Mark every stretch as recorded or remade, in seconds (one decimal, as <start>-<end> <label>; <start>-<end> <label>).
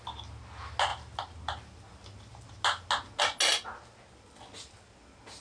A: 0.0-5.4 recorded